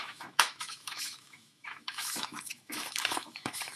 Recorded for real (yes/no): no